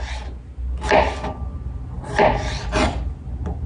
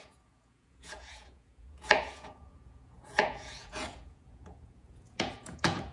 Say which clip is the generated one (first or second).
second